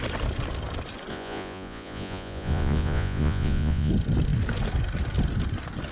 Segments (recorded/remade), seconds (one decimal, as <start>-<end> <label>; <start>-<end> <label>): 0.0-1.1 recorded; 1.1-3.9 remade; 3.9-5.9 recorded